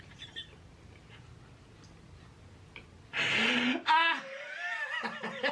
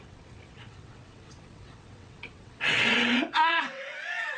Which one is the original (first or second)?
first